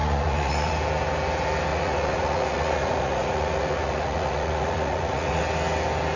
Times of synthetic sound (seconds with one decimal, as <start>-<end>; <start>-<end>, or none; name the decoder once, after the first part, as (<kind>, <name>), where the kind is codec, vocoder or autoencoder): 0.0-0.7 (vocoder, Vocos); 1.7-5.4